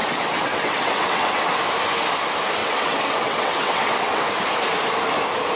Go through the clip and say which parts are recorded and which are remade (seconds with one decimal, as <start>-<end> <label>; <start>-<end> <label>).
0.0-1.6 remade; 1.6-2.6 recorded; 2.6-4.2 remade; 4.2-5.6 recorded